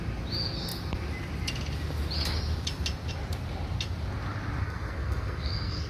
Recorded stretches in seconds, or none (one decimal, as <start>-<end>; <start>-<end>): 0.0-4.6